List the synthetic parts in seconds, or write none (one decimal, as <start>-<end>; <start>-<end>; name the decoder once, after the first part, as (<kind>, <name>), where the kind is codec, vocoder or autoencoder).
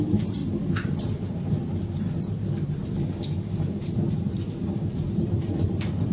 0.0-0.4 (vocoder, BigVGAN v2); 4.1-6.1